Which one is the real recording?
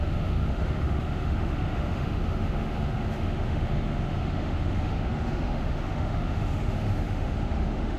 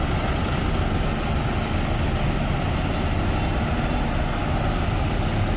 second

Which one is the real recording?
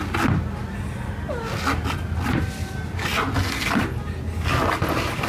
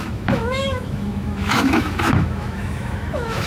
first